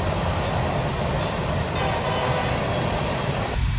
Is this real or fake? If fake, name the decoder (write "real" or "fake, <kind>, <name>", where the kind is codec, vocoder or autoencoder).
real